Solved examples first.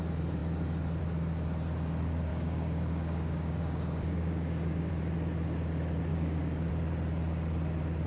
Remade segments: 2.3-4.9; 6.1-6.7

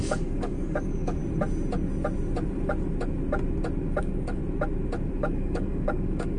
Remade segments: 0.0-1.2; 4.0-4.4; 5.2-6.4

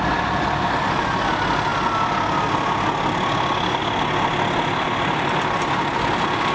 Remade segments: none